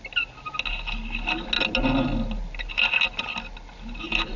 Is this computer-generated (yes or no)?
no